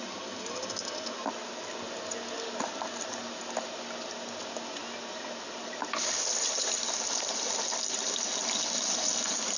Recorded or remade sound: recorded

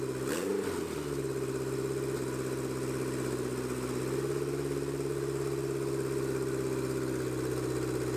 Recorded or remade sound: recorded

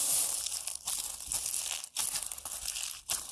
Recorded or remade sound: recorded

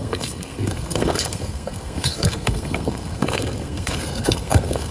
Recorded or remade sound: remade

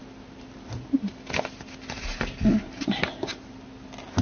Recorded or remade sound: recorded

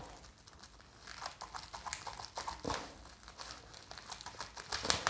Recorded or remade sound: recorded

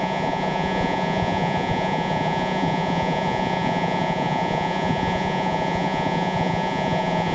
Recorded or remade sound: remade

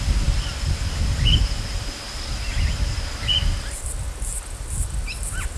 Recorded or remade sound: recorded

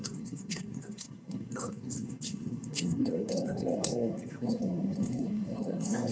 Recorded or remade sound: remade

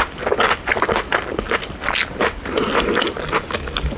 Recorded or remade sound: recorded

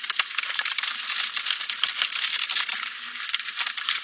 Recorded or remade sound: recorded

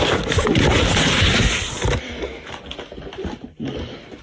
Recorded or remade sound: recorded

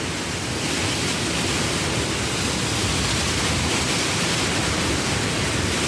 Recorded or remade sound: recorded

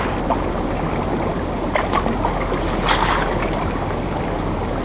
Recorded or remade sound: recorded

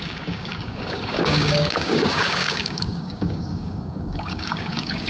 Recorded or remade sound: remade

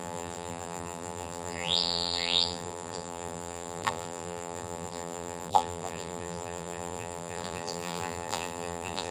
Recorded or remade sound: remade